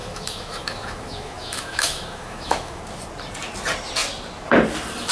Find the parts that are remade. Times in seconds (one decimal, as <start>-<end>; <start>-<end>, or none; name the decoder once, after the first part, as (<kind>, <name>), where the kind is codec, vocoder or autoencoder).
0.0-2.8 (autoencoder, DAC-VAE)